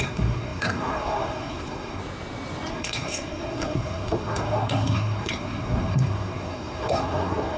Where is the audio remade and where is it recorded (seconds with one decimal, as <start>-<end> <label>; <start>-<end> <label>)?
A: 0.0-2.0 remade; 2.0-2.7 recorded; 2.7-7.6 remade

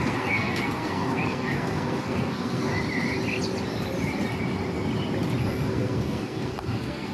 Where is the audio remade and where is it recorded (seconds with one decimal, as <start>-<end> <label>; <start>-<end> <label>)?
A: 0.0-2.7 remade; 2.7-5.4 recorded; 5.4-7.1 remade

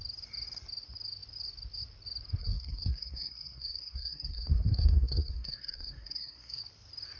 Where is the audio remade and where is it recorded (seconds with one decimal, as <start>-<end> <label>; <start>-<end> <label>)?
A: 0.0-2.4 recorded; 2.4-6.6 remade; 6.6-7.2 recorded

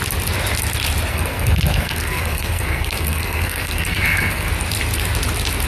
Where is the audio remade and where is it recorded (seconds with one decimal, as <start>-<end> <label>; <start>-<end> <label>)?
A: 0.0-1.1 recorded; 1.1-4.5 remade; 4.5-5.7 recorded

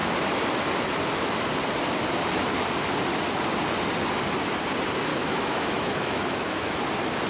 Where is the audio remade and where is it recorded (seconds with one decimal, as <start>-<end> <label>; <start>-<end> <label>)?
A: 0.0-5.1 recorded; 5.1-6.8 remade; 6.8-7.3 recorded

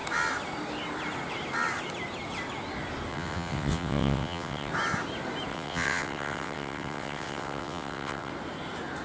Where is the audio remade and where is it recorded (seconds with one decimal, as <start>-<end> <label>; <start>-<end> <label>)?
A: 0.0-3.1 recorded; 3.1-4.7 remade; 4.7-5.5 recorded; 5.5-8.3 remade; 8.3-9.0 recorded